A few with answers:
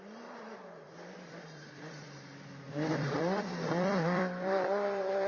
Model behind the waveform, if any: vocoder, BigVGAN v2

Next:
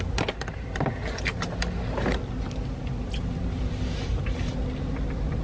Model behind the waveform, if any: none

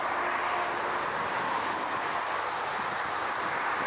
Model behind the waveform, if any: none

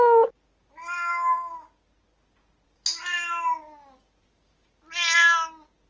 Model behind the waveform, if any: none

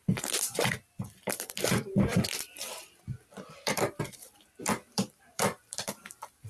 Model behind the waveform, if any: vocoder, BigVGAN v2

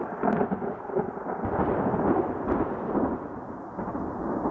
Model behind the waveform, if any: none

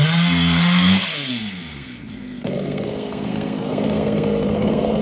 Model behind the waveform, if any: codec, SNAC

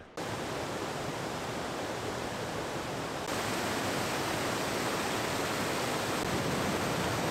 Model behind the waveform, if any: none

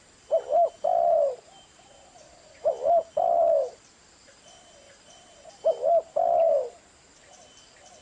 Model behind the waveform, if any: none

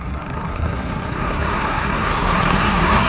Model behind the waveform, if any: codec, SNAC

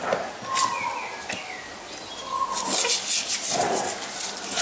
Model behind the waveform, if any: none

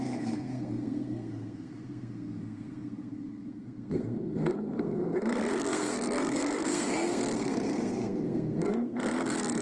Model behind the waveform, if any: codec, SNAC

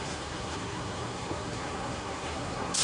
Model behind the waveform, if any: codec, SNAC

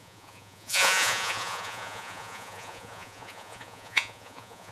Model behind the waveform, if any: vocoder, Vocos